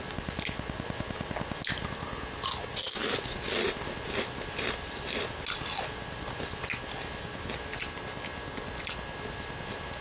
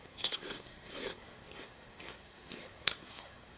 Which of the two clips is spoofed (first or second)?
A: second